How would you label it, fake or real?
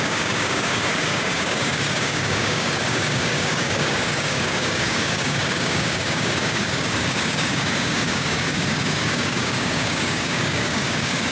fake